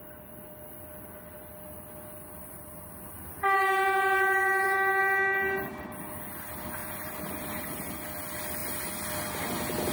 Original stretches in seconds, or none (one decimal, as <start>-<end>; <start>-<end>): 0.0-2.4; 5.0-6.8; 7.9-9.9